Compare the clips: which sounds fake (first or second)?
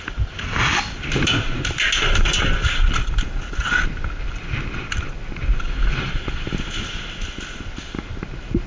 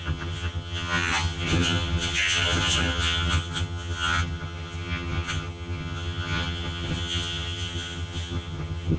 second